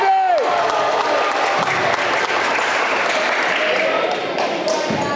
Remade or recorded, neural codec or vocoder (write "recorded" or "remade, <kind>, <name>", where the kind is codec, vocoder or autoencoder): recorded